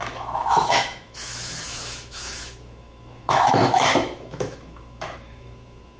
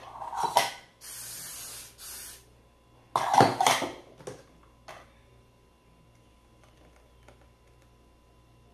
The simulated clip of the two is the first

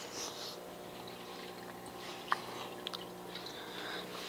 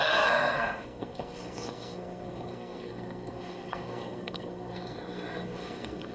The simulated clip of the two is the second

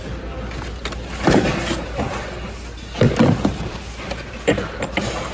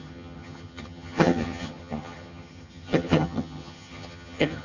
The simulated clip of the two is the second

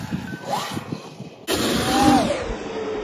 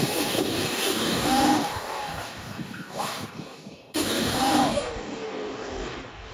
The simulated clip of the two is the second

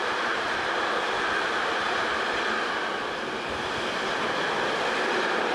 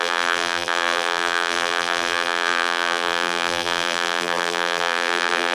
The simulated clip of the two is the second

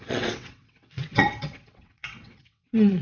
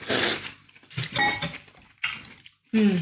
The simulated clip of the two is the first